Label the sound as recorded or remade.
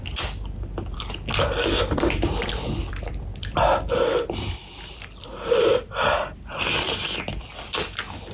remade